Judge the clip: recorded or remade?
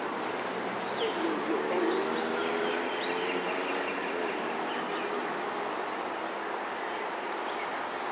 recorded